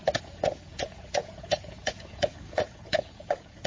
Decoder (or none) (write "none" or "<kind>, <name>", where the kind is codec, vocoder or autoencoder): vocoder, Vocos